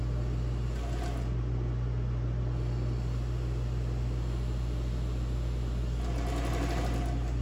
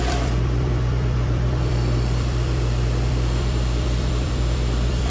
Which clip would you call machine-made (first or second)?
second